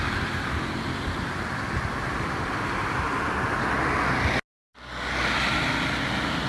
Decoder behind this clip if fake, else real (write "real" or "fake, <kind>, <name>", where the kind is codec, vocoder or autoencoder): real